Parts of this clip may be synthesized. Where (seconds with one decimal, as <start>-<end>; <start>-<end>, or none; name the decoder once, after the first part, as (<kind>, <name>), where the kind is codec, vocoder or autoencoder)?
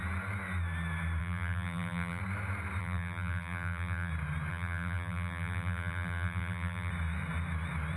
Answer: 1.2-2.2 (vocoder, BigVGAN v2); 2.8-4.1; 4.5-6.9